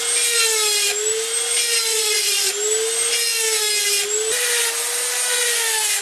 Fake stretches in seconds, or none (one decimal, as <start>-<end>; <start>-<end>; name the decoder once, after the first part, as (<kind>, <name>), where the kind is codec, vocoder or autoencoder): 1.9-2.5 (vocoder, Vocos)

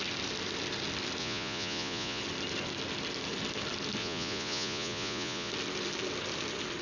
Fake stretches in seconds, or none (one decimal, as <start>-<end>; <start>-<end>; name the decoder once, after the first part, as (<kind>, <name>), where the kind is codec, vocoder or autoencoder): 1.2-2.2 (vocoder, Vocos); 4.0-5.5

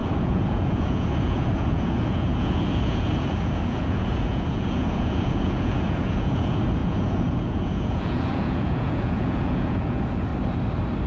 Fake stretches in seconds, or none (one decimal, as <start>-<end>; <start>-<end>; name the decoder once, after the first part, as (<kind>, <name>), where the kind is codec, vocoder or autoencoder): 0.0-10.3 (vocoder, Vocos)

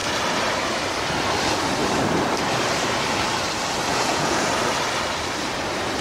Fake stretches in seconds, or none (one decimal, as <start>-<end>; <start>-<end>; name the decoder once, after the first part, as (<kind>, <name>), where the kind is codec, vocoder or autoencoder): 3.9-4.5 (vocoder, Vocos)

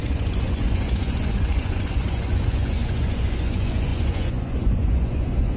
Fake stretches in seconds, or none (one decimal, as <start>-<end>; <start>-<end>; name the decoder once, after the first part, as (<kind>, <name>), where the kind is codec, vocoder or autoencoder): 0.0-5.6 (vocoder, Vocos)

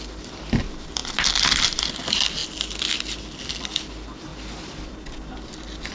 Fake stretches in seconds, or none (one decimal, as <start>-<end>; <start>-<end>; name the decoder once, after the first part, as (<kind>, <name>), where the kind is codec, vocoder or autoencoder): none